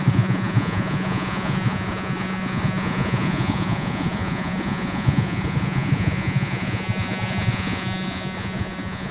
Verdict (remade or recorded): remade